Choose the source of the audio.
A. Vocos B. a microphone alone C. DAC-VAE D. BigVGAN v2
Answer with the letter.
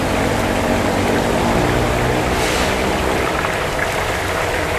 B